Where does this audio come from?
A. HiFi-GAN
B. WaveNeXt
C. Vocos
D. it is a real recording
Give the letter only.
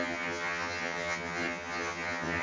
A